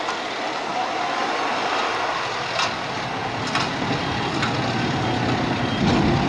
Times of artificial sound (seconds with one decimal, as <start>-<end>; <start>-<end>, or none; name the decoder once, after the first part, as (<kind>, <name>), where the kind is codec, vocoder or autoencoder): none